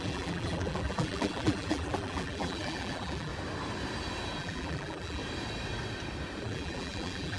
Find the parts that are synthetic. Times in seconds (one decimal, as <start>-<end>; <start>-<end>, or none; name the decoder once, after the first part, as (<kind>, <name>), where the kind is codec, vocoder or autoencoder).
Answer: 0.0-3.3 (vocoder, BigVGAN v2); 4.4-5.2; 6.4-7.4